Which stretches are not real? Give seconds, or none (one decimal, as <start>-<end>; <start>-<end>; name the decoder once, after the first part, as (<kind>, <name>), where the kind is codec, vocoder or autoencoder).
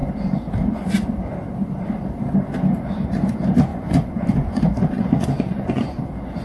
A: 3.7-6.0 (vocoder, Vocos)